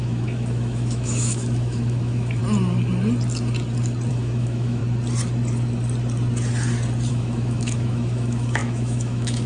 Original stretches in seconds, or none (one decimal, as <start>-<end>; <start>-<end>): 2.4-4.1; 4.8-7.1